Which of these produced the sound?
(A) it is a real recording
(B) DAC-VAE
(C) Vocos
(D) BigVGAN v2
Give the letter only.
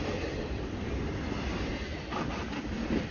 D